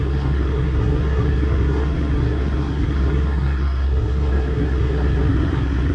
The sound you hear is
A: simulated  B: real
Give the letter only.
A